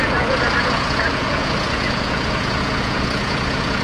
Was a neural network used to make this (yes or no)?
yes